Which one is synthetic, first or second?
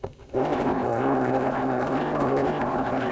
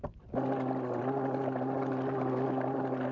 first